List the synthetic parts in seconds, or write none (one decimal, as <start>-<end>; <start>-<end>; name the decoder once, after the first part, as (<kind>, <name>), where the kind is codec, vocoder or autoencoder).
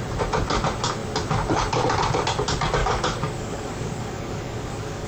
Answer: 2.8-5.1 (codec, DAC)